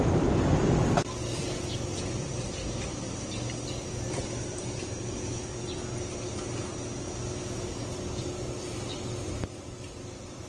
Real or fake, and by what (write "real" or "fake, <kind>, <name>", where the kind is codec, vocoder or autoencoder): real